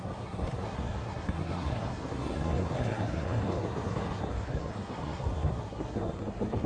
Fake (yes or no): yes